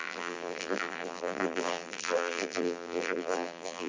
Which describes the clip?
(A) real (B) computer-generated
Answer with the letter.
B